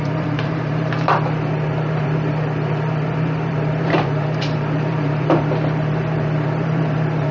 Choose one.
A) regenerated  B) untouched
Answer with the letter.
A